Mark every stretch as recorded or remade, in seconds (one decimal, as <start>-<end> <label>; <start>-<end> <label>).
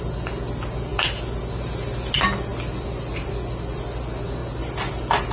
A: 0.0-5.3 recorded